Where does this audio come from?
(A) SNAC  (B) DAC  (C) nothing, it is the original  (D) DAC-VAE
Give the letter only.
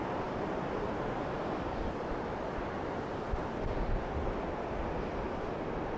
C